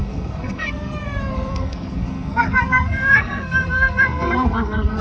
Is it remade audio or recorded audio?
remade